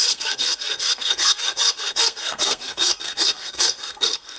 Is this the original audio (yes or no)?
no